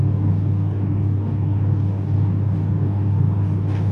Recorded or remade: remade